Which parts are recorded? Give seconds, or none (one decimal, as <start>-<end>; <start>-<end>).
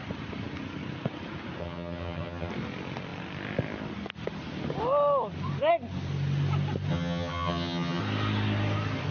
0.0-1.6; 2.5-6.9; 8.0-9.1